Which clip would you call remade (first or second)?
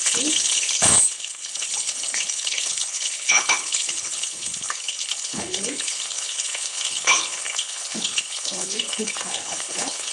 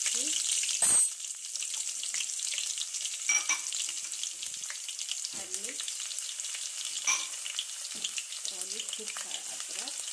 first